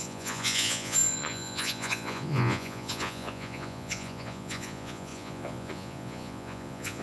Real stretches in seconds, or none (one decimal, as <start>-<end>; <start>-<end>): none